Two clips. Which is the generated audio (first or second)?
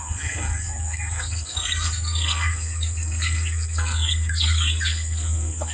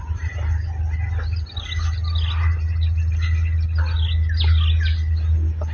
first